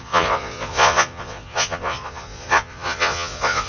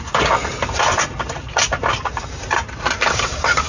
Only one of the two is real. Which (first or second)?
second